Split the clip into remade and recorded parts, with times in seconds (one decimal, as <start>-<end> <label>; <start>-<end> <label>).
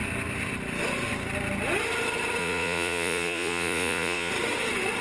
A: 0.0-2.4 recorded; 2.4-4.3 remade; 4.3-5.0 recorded